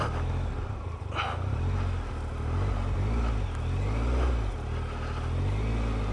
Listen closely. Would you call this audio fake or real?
real